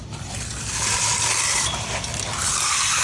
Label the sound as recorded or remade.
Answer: recorded